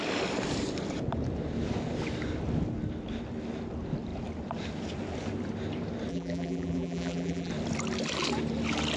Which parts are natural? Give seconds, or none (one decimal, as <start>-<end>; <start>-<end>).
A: 0.0-6.1; 7.5-9.0